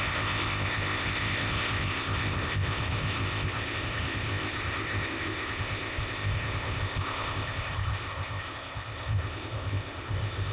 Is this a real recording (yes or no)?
no